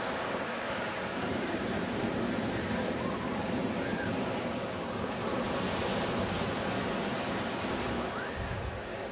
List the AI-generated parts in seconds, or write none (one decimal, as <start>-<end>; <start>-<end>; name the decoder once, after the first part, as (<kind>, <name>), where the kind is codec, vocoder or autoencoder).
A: 0.0-0.9 (codec, DAC); 4.3-5.2; 7.8-9.1